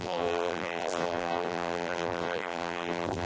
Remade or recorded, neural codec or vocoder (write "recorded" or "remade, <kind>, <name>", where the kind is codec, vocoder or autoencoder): remade, vocoder, BigVGAN v2